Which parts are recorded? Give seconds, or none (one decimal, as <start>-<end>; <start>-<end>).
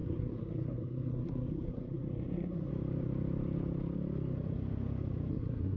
2.7-5.3